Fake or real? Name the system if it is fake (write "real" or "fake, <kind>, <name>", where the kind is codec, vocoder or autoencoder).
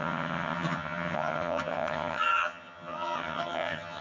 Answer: fake, vocoder, HiFi-GAN